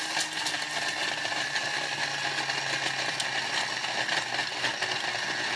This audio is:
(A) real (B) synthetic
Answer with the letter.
A